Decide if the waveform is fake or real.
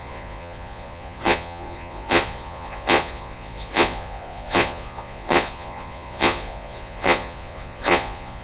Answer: fake